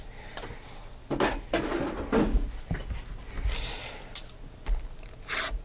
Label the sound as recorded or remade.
recorded